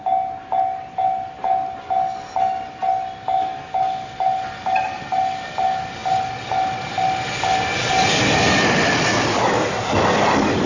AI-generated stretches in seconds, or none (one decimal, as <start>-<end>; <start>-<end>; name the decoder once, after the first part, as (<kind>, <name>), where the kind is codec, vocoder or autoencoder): none